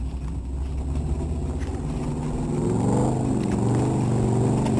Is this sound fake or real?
real